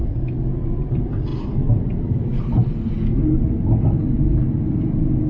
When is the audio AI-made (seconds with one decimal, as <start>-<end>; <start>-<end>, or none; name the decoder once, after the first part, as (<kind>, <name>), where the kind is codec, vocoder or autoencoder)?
1.3-2.4 (vocoder, BigVGAN v2)